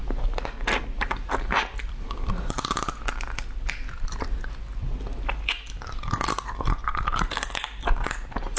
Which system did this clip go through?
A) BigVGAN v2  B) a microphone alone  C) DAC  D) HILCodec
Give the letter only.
B